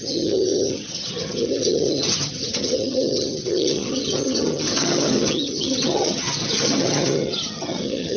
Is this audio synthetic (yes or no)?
yes